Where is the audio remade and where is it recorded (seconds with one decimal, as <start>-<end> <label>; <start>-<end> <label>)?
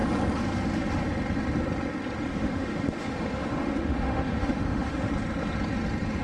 0.0-2.3 recorded; 2.3-5.1 remade; 5.1-6.2 recorded